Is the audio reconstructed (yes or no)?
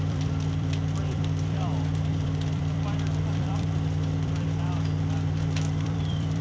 yes